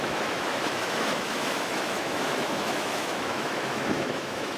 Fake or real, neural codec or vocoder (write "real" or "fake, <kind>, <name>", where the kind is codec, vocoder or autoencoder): fake, autoencoder, DAC-VAE